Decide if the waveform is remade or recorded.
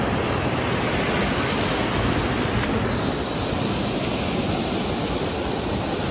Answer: recorded